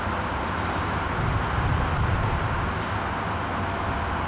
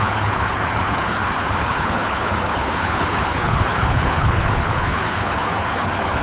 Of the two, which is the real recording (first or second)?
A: first